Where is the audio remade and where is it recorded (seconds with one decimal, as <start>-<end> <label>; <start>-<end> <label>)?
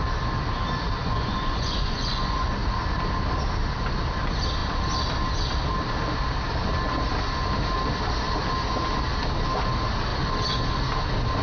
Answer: 0.0-1.0 recorded; 1.0-2.5 remade; 2.5-11.4 recorded